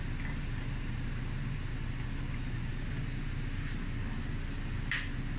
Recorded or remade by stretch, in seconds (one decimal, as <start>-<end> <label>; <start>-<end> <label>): 0.0-5.4 recorded